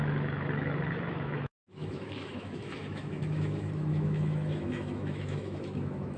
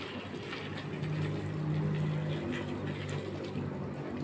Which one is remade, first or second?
first